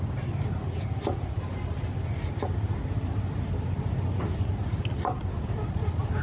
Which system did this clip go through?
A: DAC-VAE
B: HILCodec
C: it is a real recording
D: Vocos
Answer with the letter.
C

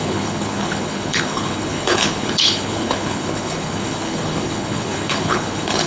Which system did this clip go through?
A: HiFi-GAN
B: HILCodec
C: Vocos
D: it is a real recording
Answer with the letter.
B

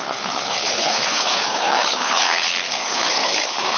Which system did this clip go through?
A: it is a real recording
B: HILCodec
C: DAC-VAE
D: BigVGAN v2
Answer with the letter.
B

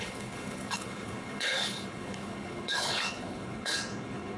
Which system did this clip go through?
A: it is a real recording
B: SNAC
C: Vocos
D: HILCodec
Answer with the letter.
D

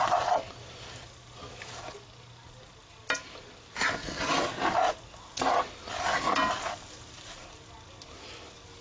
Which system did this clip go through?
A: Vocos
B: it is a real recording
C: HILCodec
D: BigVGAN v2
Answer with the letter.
B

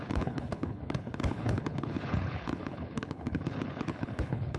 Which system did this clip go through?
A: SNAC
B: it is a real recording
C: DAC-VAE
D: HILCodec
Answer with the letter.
D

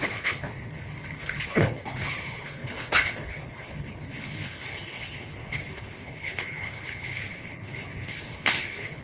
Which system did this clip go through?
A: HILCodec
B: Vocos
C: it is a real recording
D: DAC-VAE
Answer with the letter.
A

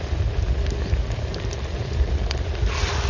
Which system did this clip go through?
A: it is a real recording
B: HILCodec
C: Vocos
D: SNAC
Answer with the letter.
A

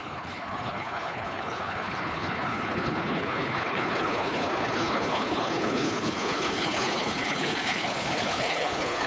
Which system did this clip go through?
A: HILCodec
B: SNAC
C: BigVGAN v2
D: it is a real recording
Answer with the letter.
A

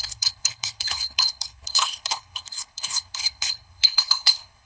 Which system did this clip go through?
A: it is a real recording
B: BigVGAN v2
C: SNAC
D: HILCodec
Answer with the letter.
D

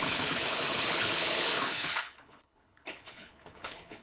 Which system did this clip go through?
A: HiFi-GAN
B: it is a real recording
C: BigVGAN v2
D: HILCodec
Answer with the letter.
D